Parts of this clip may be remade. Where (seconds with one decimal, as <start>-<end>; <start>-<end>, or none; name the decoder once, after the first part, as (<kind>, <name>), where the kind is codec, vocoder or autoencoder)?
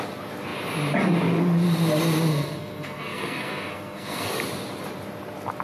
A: 2.3-4.3 (codec, SNAC)